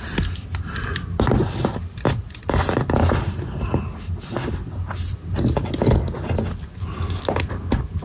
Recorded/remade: recorded